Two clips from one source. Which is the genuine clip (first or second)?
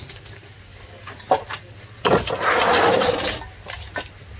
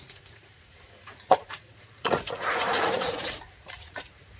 first